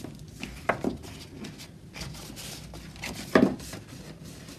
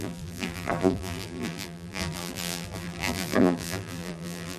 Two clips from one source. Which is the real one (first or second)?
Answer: first